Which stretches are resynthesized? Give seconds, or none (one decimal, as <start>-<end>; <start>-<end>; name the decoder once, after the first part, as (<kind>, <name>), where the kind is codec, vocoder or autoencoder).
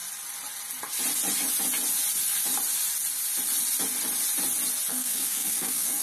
4.9-6.0 (codec, SNAC)